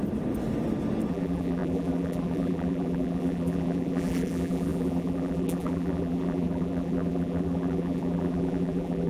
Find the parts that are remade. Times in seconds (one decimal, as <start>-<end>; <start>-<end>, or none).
1.1-9.1